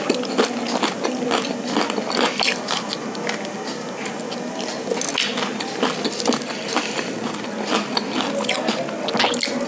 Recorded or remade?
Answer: recorded